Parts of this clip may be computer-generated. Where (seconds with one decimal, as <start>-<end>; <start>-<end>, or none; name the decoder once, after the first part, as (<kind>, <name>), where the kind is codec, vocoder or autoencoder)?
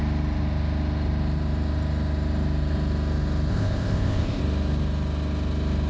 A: 3.5-4.4 (codec, ZipCodec)